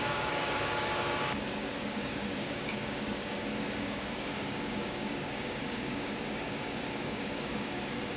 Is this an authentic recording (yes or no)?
no